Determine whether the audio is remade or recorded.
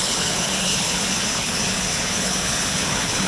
remade